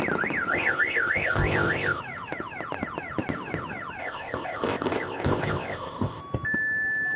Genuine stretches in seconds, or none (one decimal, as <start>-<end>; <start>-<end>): 0.0-0.5; 2.0-4.0; 6.2-7.2